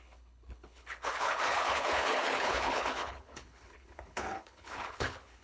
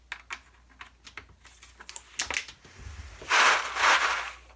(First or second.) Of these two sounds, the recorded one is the second